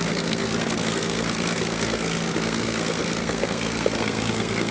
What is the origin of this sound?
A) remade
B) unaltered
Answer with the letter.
A